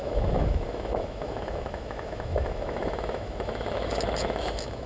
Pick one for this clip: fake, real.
fake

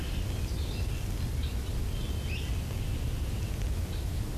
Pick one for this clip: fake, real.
real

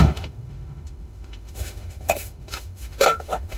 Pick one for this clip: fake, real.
fake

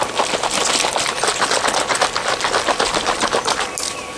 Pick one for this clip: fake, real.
real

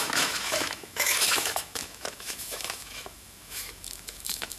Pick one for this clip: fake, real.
fake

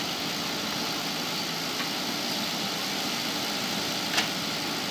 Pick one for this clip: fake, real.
real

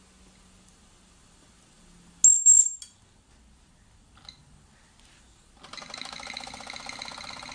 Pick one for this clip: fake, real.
real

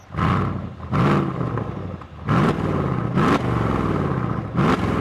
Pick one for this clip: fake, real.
real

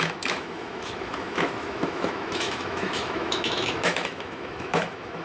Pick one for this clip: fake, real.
fake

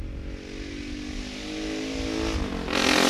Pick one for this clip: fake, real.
real